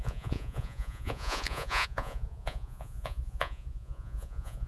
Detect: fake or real fake